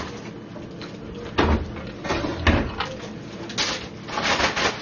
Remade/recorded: recorded